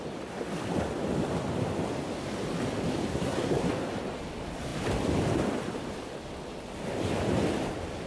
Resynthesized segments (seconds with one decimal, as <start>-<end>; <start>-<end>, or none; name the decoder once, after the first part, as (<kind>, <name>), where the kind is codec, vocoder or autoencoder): 3.1-3.7 (codec, SNAC)